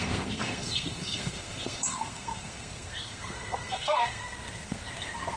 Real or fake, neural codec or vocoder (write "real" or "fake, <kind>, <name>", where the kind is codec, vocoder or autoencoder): fake, codec, SNAC